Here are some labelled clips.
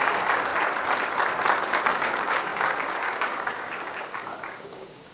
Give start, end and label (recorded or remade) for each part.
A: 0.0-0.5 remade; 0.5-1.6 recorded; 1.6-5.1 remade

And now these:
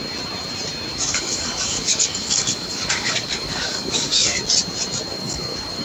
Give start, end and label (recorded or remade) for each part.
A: 0.0-0.9 recorded; 0.9-4.4 remade; 4.4-5.1 recorded; 5.1-5.8 remade